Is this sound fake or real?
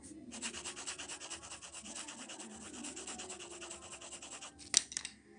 real